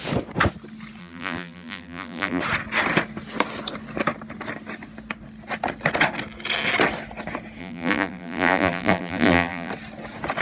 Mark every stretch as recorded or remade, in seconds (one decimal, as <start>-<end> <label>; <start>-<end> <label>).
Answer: 0.0-1.0 recorded; 1.0-2.4 remade; 2.4-7.6 recorded; 7.6-9.7 remade; 9.7-10.4 recorded